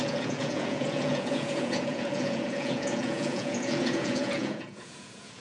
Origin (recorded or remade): remade